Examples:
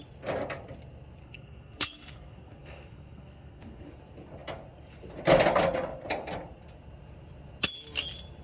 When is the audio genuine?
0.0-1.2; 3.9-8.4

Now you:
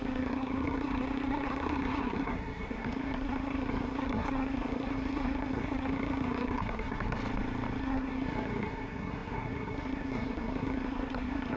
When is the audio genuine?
7.2-7.8

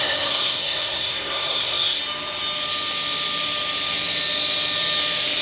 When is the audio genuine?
2.0-5.4

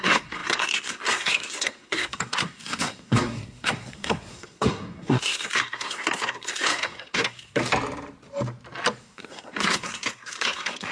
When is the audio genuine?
7.6-9.0

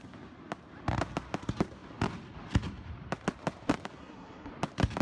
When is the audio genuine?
0.0-4.0; 4.5-5.0